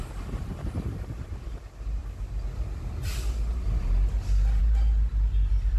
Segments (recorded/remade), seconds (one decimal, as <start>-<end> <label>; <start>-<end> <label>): 0.0-5.8 recorded